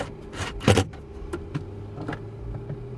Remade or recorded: recorded